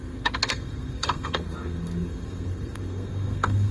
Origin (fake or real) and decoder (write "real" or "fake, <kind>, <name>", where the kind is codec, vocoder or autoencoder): fake, codec, SNAC